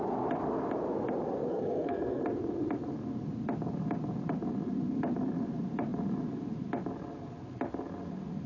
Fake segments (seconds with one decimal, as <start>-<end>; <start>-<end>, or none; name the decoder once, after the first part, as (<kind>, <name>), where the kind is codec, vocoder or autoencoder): 1.5-2.2 (codec, SNAC)